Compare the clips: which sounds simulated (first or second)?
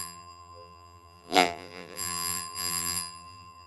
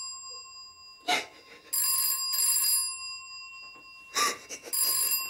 first